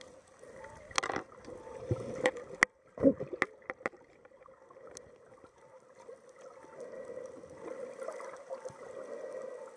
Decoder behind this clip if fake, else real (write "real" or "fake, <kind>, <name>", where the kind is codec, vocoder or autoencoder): real